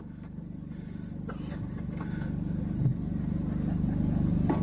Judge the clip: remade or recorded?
recorded